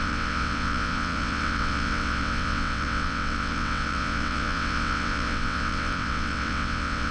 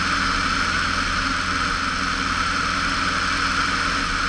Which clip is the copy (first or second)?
first